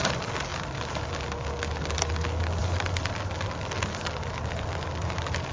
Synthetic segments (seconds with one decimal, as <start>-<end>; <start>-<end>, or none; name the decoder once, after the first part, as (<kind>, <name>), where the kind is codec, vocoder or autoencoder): 0.5-1.0 (vocoder, BigVGAN v2); 2.6-5.5